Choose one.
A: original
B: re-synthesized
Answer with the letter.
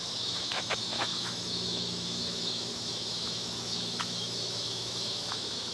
B